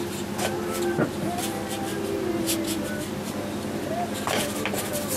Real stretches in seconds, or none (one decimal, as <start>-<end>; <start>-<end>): 0.0-5.2